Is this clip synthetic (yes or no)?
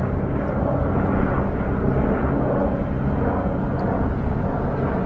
no